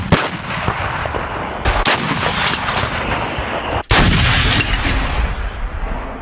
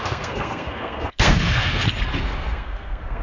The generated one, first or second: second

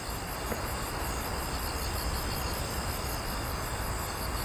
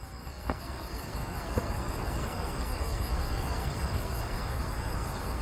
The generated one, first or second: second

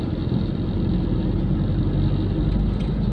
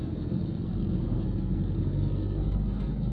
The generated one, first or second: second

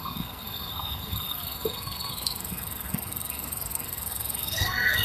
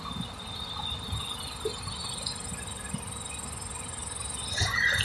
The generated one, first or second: first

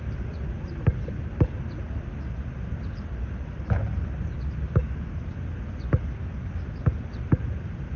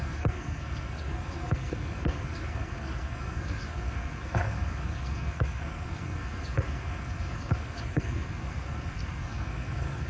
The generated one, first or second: second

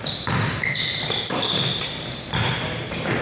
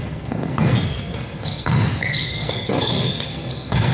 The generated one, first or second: second